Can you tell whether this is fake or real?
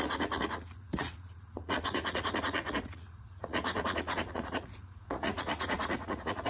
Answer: fake